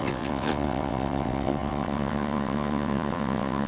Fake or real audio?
fake